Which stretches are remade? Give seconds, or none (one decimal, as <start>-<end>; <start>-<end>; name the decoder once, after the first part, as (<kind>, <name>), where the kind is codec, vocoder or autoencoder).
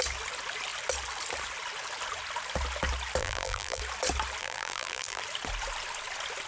3.2-3.8 (vocoder, BigVGAN v2); 4.4-5.2